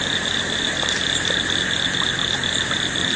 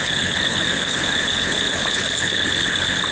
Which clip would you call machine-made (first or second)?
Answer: second